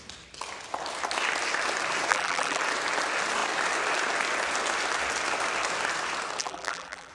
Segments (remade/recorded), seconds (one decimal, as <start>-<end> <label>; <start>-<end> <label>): 0.0-2.1 recorded; 2.1-2.6 remade; 2.6-6.4 recorded; 6.4-7.1 remade